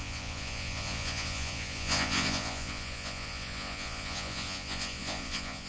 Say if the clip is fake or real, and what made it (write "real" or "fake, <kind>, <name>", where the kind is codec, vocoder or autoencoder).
fake, vocoder, Vocos